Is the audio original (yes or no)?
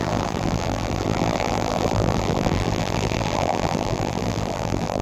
no